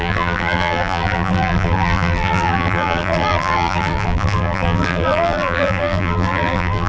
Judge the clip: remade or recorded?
remade